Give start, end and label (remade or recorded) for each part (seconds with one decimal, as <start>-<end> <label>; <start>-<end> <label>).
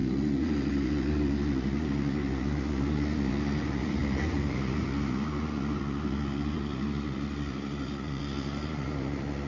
0.0-9.5 remade